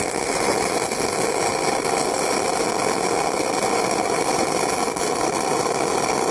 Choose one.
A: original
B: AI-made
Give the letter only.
A